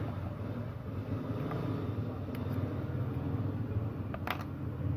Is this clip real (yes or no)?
yes